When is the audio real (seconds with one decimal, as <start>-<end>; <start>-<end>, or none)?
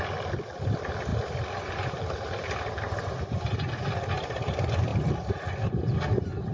0.0-6.5